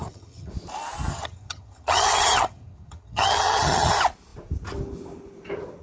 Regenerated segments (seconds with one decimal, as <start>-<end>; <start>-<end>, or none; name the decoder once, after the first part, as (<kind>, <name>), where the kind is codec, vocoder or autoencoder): 0.0-0.5 (vocoder, HiFi-GAN); 1.1-3.9